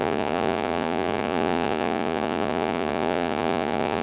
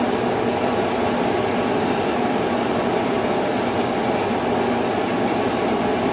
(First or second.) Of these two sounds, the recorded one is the second